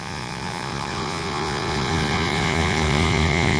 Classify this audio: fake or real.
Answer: fake